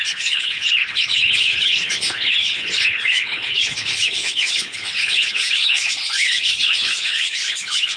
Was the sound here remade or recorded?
remade